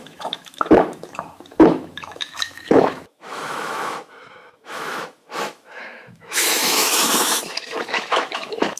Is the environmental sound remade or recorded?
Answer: remade